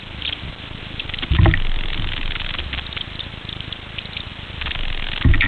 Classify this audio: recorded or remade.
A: recorded